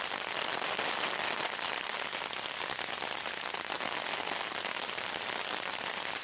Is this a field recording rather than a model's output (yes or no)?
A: yes